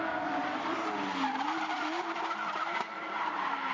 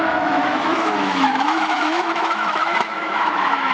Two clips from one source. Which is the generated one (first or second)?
second